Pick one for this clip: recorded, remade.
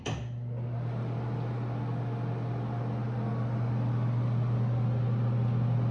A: recorded